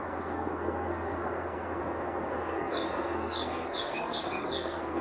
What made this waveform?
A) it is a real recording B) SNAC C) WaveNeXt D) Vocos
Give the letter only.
B